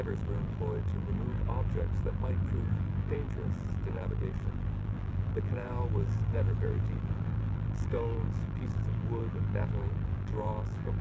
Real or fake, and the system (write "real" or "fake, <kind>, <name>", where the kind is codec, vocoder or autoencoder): fake, vocoder, BigVGAN v2